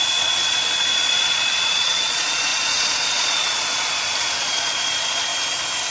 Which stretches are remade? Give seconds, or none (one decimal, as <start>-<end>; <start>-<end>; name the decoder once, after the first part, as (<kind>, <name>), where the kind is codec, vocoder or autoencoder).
0.0-5.3 (vocoder, Vocos)